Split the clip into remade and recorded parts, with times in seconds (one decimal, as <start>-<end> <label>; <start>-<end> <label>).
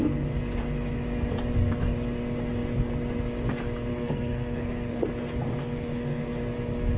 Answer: 0.0-3.9 recorded; 3.9-5.0 remade; 5.0-5.6 recorded; 5.6-6.2 remade; 6.2-7.0 recorded